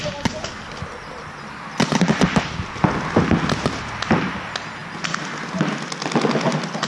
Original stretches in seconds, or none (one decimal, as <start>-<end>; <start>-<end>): 0.0-6.9